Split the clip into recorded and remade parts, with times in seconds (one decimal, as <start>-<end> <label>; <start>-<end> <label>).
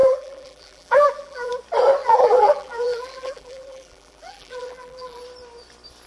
0.0-1.5 remade; 1.5-2.0 recorded; 2.0-5.2 remade; 5.2-6.1 recorded